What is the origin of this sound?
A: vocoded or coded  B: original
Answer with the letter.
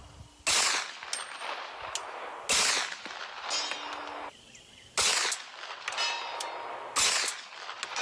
B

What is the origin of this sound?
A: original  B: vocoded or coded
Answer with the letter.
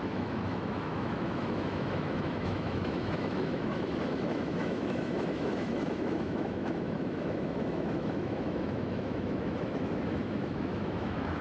B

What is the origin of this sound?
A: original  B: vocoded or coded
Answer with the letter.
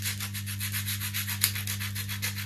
A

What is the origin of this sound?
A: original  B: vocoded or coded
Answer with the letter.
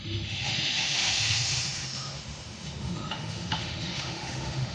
B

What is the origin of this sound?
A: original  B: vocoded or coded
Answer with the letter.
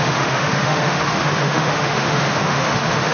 B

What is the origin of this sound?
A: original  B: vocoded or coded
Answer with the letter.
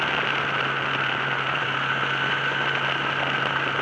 A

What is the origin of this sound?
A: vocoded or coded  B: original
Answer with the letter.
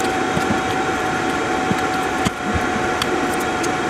B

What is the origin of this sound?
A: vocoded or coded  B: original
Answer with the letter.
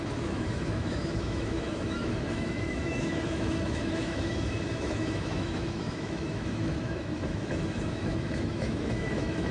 A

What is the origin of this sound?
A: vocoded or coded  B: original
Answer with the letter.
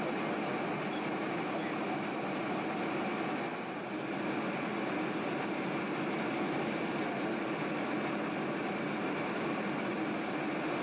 B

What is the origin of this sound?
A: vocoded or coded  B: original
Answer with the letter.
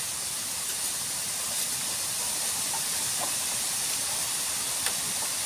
B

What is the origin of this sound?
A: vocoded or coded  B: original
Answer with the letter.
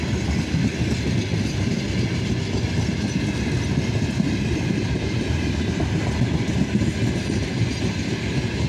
B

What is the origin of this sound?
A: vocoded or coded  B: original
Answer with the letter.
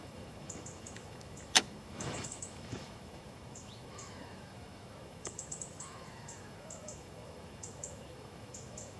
A